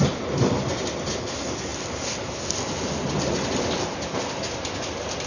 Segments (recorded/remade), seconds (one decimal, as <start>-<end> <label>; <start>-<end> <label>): 0.0-5.3 recorded